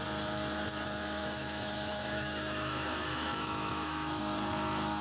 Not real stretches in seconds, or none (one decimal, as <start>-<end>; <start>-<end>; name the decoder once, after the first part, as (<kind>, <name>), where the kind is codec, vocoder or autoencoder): 1.2-4.2 (autoencoder, DAC-VAE)